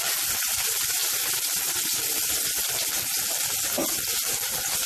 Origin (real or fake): real